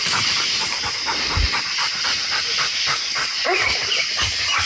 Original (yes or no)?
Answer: yes